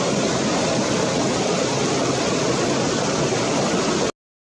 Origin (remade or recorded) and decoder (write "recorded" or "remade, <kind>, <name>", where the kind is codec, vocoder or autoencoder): recorded